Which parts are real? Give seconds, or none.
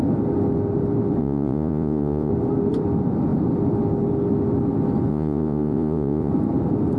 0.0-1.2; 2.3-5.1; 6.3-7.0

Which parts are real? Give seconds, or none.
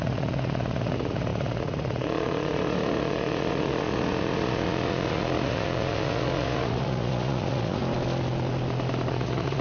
7.8-9.1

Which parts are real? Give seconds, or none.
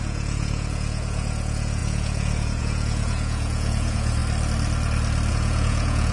4.2-5.3